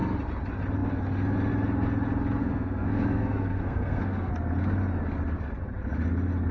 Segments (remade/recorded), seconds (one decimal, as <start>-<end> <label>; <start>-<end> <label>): 0.0-2.4 recorded; 2.4-4.3 remade; 4.3-6.5 recorded